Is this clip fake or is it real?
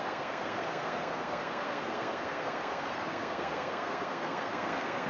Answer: fake